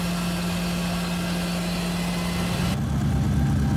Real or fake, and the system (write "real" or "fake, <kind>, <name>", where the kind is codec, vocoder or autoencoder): real